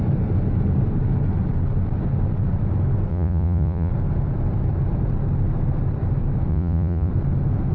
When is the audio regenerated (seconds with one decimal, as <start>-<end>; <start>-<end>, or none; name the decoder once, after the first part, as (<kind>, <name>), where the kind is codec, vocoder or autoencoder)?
3.1-3.9 (vocoder, Vocos); 6.5-7.1